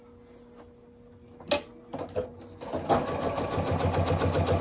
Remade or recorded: recorded